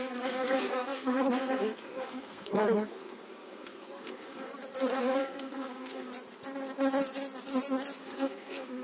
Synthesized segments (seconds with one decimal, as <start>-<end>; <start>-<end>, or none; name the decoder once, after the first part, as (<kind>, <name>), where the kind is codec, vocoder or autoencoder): 0.0-4.5 (codec, SNAC); 5.0-6.1; 8.0-8.8